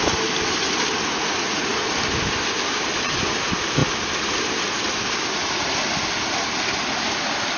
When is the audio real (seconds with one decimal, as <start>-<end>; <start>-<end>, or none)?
0.0-1.1; 1.8-7.6